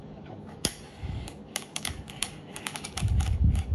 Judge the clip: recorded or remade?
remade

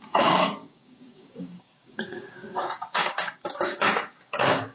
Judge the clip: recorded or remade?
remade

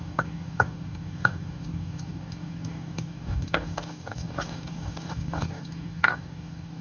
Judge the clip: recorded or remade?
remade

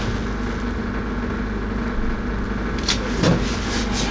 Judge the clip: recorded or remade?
recorded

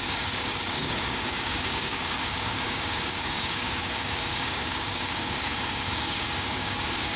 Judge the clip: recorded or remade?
remade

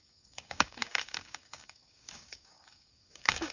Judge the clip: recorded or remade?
remade